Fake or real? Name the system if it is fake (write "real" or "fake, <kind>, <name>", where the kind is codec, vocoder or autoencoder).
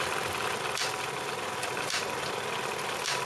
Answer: real